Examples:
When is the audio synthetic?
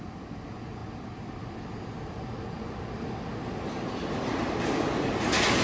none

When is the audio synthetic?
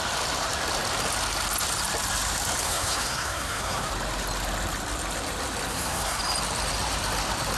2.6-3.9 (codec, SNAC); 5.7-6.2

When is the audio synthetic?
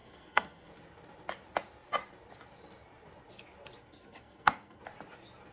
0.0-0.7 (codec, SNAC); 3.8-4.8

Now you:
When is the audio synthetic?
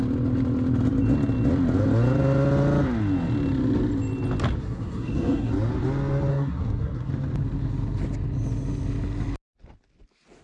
4.6-5.5 (codec, SNAC); 6.3-7.1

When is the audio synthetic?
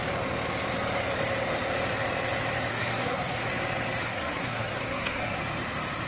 2.7-3.5 (codec, SNAC); 4.0-5.4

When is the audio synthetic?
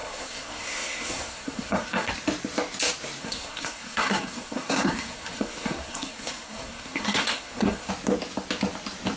0.0-2.1 (codec, SNAC); 3.2-7.9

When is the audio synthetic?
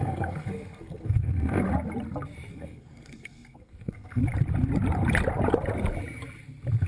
0.0-1.6 (codec, SNAC); 2.5-4.2